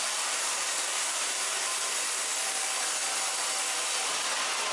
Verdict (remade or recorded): recorded